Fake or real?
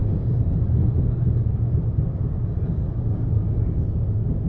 real